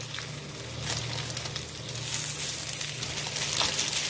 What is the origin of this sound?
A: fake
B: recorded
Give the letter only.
B